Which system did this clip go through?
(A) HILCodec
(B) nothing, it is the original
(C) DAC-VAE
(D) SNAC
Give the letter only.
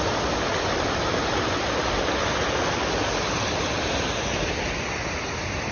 B